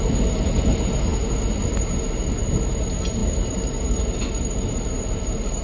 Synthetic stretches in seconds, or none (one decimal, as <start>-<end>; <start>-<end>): none